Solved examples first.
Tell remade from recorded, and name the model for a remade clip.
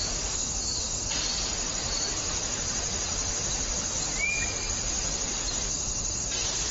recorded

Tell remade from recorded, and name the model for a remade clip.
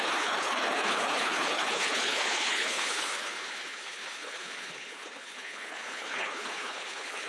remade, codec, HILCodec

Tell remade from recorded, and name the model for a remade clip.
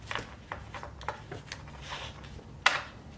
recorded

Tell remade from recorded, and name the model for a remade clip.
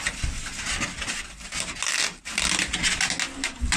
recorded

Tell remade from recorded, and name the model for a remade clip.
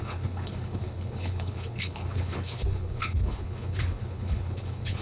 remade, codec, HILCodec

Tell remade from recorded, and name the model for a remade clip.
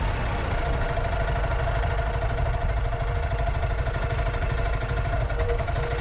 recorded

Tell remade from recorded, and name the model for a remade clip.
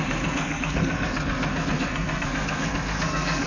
remade, codec, SNAC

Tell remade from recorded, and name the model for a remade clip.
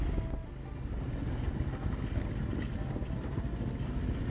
recorded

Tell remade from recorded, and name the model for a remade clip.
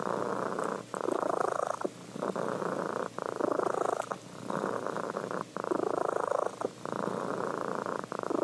recorded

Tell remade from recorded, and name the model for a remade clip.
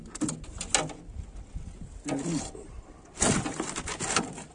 recorded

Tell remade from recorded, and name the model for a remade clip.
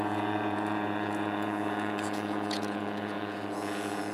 remade, vocoder, Vocos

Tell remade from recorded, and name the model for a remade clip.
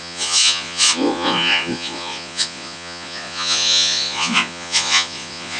remade, vocoder, Vocos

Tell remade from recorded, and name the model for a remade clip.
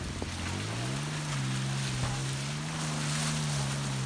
recorded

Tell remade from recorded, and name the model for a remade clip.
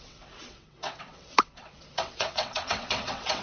remade, vocoder, WaveNeXt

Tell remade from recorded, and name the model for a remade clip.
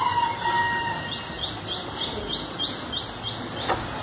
recorded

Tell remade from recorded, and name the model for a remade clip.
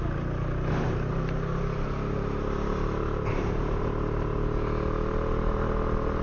recorded